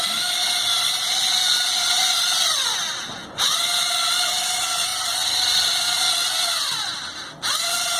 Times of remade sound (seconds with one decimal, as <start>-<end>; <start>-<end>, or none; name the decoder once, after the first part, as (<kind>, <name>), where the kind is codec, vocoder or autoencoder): none